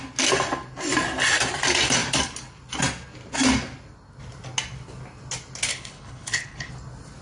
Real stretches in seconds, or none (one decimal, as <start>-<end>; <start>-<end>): 0.0-5.7; 6.7-7.2